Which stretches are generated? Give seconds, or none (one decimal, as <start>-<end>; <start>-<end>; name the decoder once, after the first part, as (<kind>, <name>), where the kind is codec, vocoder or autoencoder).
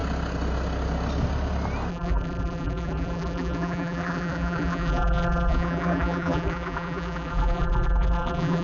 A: 1.9-8.6 (vocoder, BigVGAN v2)